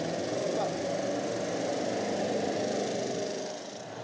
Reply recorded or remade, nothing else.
recorded